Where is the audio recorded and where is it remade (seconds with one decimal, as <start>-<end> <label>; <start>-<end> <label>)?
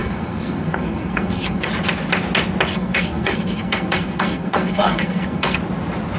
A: 0.0-1.7 remade; 1.7-2.7 recorded; 2.7-5.6 remade; 5.6-6.2 recorded